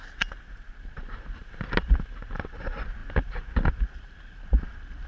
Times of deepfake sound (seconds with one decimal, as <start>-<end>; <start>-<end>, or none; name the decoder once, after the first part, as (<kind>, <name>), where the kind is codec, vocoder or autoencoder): 0.0-0.7 (vocoder, BigVGAN v2)